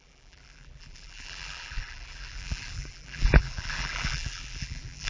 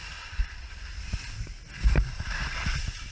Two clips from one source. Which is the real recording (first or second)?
second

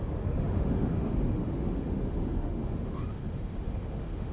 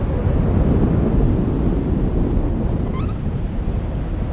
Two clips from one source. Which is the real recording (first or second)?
second